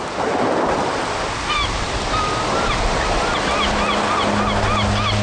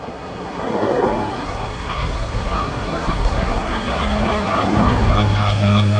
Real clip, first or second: first